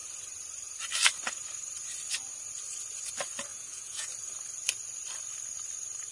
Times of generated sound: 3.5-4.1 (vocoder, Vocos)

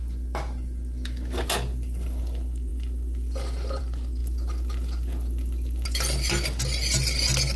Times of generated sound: none

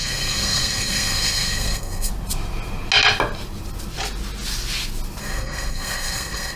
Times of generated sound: 0.0-2.1 (codec, SNAC); 5.2-6.6

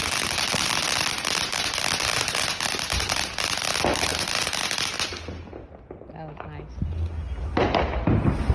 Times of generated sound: none

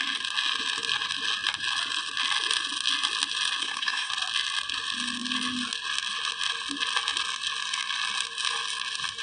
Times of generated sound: 3.6-4.1 (codec, SNAC)

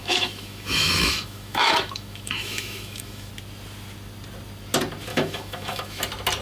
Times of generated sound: 0.0-3.3 (autoencoder, DAC-VAE); 5.1-6.0